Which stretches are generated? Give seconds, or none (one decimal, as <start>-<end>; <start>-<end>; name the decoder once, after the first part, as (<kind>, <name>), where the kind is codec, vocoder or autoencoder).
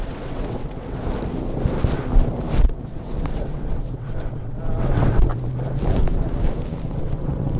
0.0-1.0 (vocoder, WaveNeXt); 2.6-5.3; 7.0-7.6